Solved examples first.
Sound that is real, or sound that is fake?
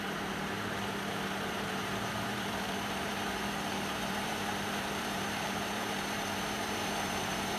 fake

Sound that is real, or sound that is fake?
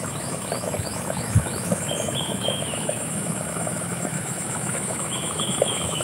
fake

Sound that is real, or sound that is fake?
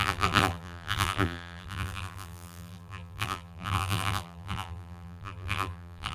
fake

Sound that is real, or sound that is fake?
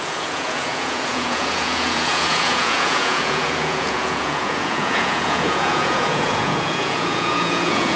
fake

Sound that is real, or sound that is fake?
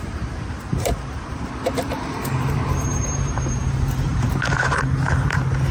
fake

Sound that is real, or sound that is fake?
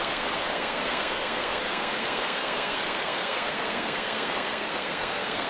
fake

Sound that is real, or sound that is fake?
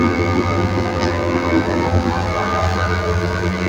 fake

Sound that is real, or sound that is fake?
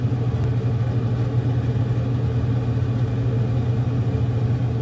real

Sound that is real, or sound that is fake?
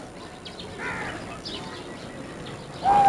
real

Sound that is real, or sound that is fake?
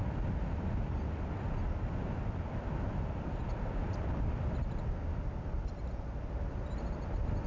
real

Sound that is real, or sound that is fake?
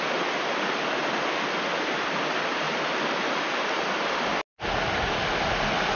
real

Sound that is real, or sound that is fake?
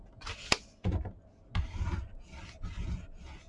real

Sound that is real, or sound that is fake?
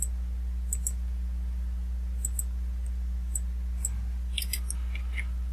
real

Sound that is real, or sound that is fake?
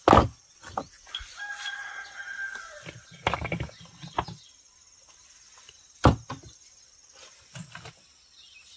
real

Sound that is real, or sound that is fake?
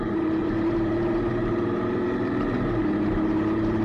fake